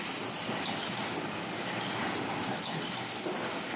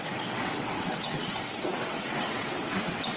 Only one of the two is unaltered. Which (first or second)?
first